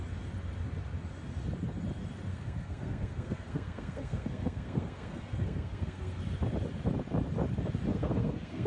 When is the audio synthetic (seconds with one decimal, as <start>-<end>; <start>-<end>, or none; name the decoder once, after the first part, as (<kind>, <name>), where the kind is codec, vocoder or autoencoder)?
2.3-6.2 (codec, SNAC); 7.9-8.7